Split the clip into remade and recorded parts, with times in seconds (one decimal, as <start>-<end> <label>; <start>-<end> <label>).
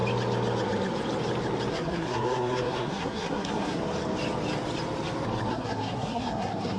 0.0-1.7 recorded; 1.7-3.8 remade; 3.8-5.5 recorded; 5.5-6.8 remade